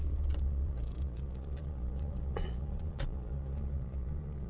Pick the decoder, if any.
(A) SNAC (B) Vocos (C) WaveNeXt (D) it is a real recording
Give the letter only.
B